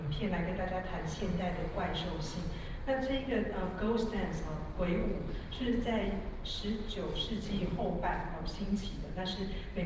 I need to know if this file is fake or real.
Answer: fake